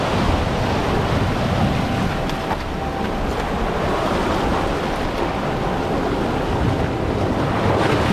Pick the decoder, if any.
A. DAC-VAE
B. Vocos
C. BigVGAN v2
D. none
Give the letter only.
D